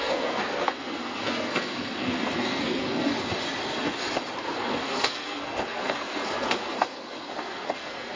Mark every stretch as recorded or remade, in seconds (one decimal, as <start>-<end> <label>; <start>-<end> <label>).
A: 0.0-3.1 remade; 3.1-4.4 recorded; 4.4-8.2 remade